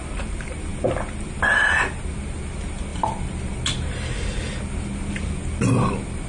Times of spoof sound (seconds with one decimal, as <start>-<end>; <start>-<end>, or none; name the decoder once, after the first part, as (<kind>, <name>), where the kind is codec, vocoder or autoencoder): none